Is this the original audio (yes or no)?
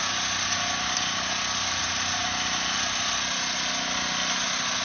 yes